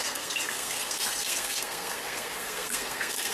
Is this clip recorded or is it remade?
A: remade